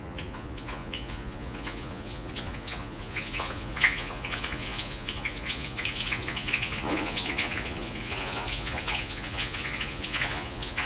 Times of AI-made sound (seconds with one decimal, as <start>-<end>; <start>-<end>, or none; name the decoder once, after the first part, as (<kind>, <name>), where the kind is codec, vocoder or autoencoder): 0.0-10.9 (vocoder, Vocos)